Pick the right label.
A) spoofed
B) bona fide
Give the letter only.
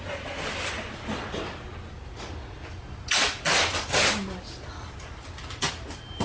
B